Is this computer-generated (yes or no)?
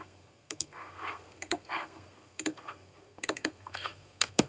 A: yes